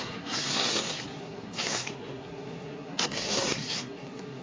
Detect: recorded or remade remade